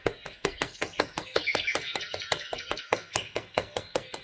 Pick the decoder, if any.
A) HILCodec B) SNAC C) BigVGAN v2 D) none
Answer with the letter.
B